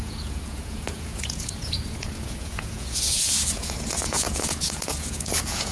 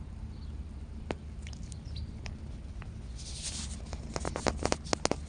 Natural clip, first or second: second